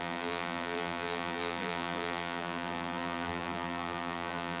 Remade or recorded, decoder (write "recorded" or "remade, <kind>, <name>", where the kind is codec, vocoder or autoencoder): remade, vocoder, BigVGAN v2